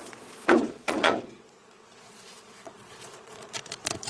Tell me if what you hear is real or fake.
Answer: fake